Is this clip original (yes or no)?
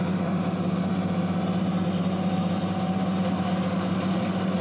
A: yes